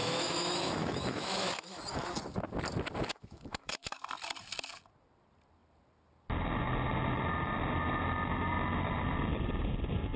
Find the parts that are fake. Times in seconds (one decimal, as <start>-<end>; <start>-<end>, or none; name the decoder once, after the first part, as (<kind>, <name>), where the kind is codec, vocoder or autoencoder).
0.0-1.8 (autoencoder, DAC-VAE); 3.0-4.0